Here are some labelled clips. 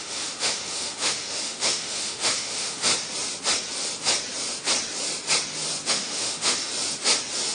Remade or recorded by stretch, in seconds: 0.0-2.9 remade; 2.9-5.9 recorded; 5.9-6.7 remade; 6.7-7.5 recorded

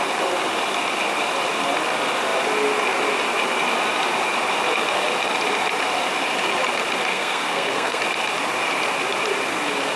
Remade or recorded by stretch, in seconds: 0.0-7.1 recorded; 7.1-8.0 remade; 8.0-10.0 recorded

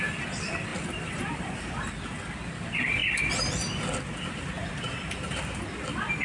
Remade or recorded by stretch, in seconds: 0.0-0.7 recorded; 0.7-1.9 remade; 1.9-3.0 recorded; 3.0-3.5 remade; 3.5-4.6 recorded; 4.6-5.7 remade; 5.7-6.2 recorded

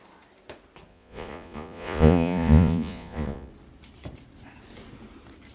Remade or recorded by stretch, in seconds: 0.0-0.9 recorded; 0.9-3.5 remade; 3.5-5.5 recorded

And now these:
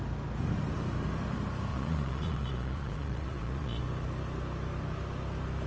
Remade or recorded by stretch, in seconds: 0.0-1.7 recorded; 1.7-3.8 remade; 3.8-5.7 recorded

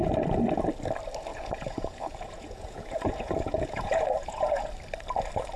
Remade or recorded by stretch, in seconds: 0.0-1.3 recorded; 1.3-4.7 remade; 4.7-5.6 recorded

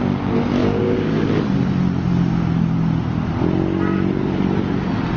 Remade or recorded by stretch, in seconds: 0.0-0.6 recorded; 0.6-1.3 remade; 1.3-5.2 recorded